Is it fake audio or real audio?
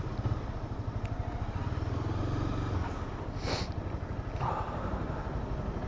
real